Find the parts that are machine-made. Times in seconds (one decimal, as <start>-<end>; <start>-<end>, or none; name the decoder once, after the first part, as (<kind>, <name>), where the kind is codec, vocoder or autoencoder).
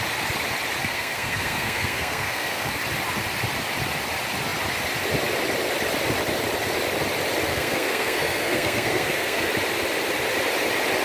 0.8-2.8 (codec, SNAC); 7.5-9.5